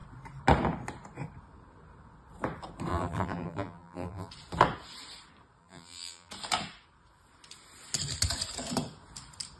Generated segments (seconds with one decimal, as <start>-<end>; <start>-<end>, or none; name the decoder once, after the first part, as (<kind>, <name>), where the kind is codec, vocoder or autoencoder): 2.9-4.3 (vocoder, BigVGAN v2); 5.6-6.3

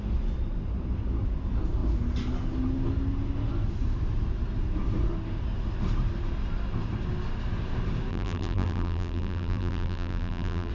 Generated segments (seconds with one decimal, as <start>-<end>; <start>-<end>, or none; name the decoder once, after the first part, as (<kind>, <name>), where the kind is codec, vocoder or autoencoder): 8.1-10.7 (vocoder, BigVGAN v2)

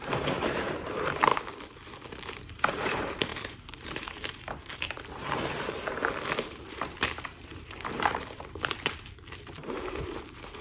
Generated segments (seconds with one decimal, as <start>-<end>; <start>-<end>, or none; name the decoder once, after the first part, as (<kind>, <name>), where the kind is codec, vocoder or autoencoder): 0.0-1.3 (vocoder, BigVGAN v2); 2.3-6.0; 6.5-10.6

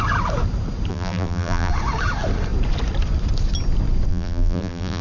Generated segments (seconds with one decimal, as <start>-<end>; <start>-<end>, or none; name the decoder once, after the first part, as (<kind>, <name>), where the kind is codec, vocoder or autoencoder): 0.9-1.7 (vocoder, BigVGAN v2); 4.1-5.0

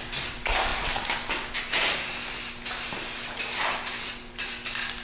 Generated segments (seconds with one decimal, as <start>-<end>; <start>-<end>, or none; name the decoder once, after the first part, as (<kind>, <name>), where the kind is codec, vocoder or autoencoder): none